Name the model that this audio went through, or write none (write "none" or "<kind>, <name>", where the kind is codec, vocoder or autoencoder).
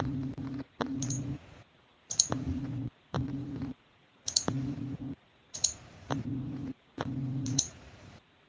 vocoder, Vocos